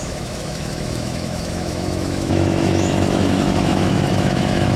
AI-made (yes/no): yes